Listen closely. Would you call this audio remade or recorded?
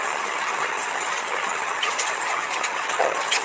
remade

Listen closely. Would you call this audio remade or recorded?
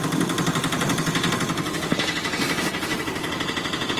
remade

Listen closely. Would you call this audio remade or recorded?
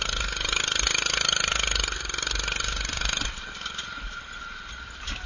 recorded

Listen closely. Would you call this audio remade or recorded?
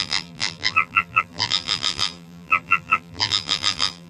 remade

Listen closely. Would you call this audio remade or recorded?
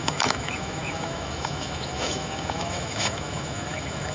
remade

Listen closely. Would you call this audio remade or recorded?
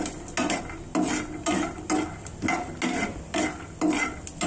recorded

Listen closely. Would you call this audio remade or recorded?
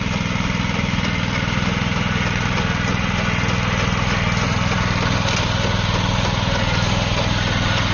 recorded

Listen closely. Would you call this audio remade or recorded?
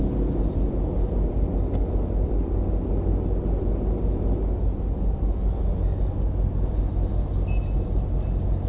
recorded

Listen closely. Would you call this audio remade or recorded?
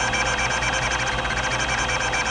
recorded